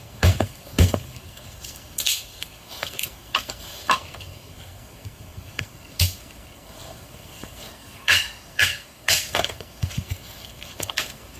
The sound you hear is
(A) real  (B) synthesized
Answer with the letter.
B